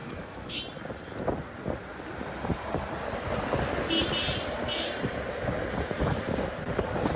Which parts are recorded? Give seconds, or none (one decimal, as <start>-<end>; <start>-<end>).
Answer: 0.6-7.2